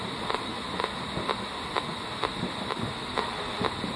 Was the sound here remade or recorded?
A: recorded